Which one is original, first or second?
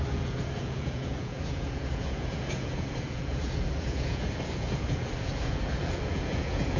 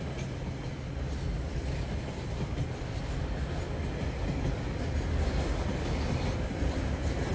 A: second